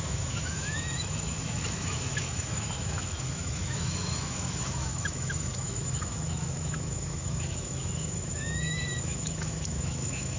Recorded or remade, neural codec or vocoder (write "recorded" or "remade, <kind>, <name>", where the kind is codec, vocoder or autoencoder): remade, autoencoder, DAC-VAE